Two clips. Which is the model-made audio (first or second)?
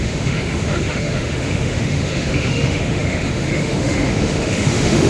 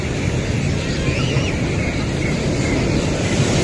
first